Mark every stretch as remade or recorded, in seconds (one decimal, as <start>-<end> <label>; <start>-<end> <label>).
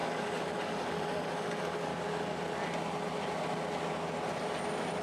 0.0-1.9 remade; 1.9-5.0 recorded